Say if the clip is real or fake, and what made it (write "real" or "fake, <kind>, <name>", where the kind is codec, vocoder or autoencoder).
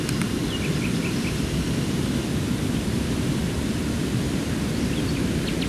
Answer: real